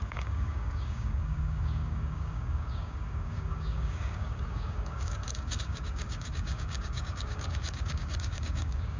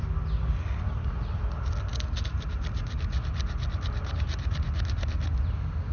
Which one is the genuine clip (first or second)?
second